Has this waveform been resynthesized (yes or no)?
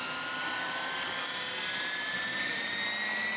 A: no